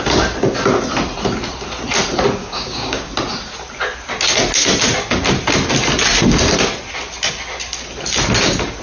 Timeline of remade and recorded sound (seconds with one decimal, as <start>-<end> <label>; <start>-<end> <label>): 0.0-2.4 recorded; 2.4-3.1 remade; 3.1-8.8 recorded